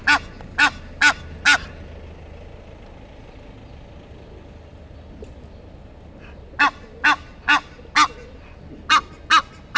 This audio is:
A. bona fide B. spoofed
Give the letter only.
A